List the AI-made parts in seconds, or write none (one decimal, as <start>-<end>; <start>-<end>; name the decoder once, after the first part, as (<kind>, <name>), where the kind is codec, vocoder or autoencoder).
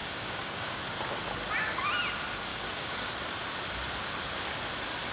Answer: 0.0-0.8 (codec, DAC); 2.5-3.1